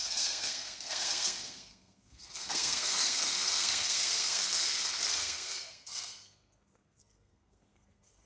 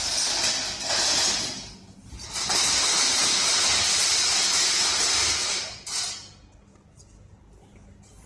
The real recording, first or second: second